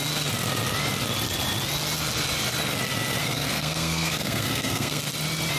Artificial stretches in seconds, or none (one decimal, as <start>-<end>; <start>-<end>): 3.2-5.0